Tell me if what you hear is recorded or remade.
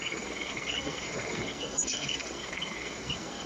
remade